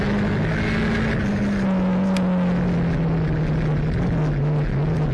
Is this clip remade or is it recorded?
recorded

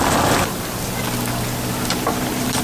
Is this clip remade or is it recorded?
remade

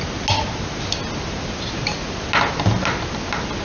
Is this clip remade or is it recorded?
recorded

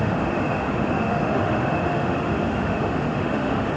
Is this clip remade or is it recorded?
remade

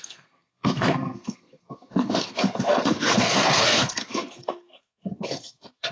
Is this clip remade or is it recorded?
remade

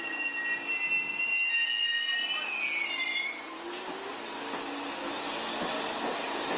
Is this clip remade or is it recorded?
recorded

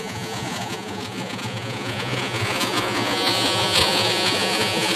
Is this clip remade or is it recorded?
remade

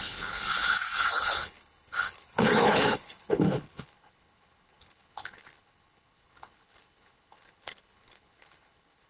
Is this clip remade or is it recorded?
remade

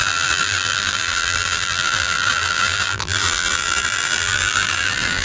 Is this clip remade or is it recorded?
remade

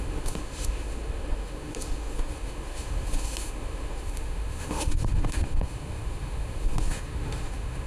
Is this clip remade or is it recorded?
remade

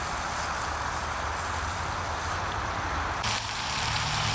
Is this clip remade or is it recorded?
recorded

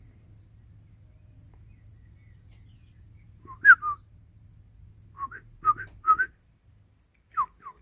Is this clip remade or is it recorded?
recorded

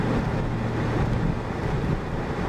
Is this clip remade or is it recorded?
recorded